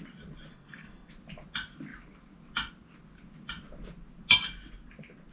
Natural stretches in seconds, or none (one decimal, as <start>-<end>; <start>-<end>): 0.0-0.5; 1.1-5.3